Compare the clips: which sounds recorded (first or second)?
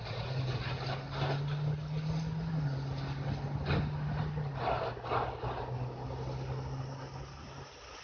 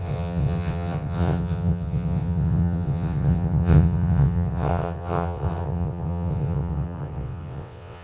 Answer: first